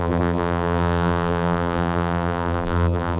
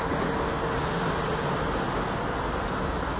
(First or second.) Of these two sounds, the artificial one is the first